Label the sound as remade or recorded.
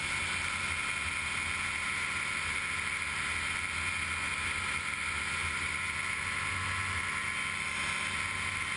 recorded